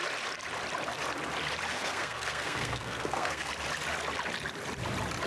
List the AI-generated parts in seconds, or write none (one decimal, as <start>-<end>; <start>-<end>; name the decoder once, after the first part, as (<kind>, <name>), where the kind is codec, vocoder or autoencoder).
1.7-3.5 (codec, SNAC)